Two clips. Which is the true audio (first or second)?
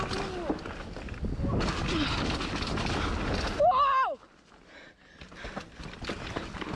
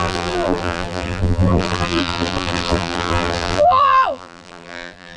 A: first